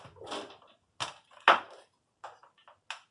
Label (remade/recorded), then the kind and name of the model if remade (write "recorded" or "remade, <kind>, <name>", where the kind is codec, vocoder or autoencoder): recorded